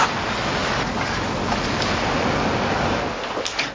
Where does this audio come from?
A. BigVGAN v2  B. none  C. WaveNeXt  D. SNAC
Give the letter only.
B